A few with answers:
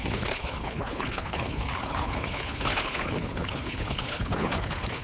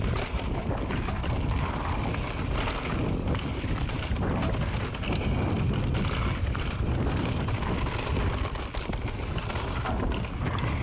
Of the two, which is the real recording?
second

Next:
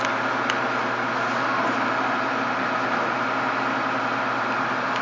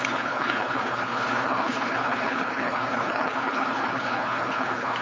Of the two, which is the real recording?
first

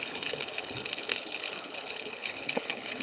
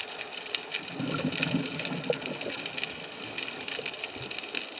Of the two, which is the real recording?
second